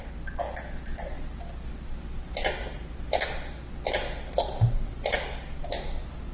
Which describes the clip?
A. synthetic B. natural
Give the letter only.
B